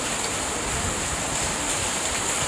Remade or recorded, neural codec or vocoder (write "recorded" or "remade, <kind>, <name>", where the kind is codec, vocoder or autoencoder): recorded